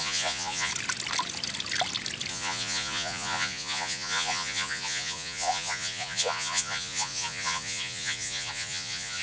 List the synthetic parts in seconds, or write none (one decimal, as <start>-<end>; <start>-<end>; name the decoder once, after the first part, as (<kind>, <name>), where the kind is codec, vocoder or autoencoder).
0.0-0.7 (vocoder, Vocos); 2.3-9.2